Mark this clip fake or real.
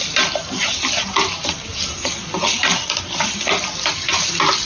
real